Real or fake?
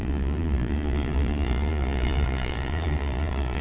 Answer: fake